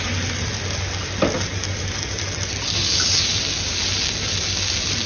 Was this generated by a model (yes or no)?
no